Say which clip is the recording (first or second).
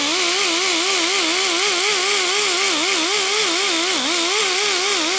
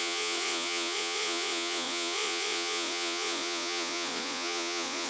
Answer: first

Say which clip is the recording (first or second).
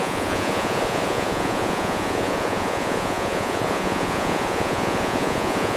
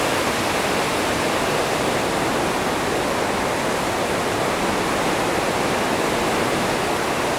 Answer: second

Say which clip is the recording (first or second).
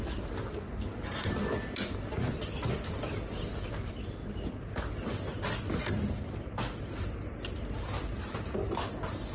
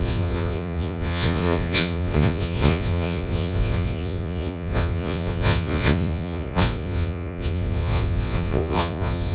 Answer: first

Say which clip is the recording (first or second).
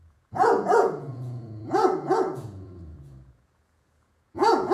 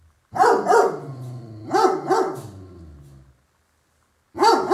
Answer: second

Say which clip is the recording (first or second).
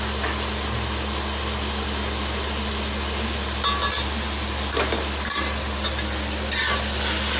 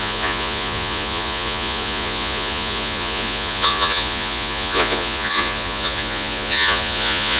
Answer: first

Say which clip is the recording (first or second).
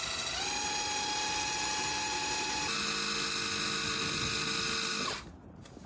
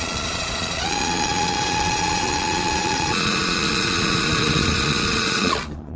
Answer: first